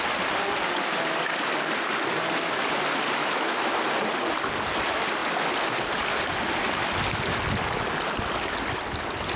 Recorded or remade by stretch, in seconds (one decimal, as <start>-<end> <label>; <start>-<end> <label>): 0.0-3.2 recorded; 3.2-3.7 remade; 3.7-9.4 recorded